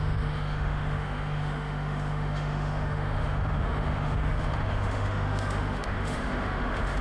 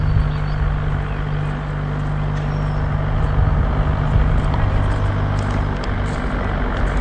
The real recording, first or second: second